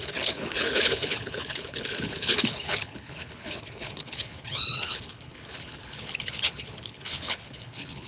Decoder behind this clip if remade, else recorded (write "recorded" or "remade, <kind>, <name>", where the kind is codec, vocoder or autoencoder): remade, codec, HILCodec